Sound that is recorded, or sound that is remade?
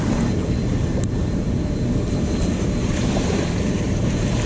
remade